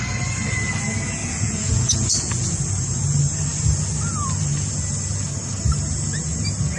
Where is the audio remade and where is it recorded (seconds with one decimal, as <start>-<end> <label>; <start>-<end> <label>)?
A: 0.0-1.2 recorded; 1.2-2.6 remade; 2.6-6.8 recorded